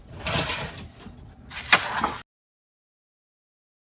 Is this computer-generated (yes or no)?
no